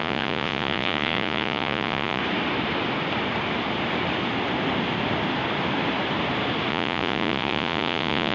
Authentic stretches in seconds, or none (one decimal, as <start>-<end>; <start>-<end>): 2.2-6.7